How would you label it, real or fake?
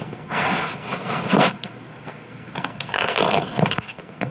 fake